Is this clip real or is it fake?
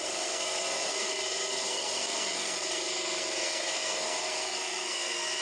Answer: fake